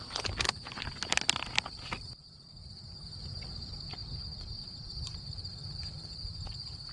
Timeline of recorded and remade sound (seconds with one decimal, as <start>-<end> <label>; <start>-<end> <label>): 0.0-6.9 recorded